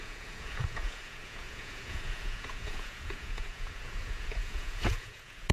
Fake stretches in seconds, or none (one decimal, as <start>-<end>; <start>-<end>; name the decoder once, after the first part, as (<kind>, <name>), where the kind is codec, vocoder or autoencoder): 0.0-5.5 (vocoder, Vocos)